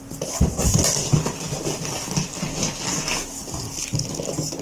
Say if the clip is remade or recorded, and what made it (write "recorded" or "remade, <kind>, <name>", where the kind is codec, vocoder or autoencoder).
recorded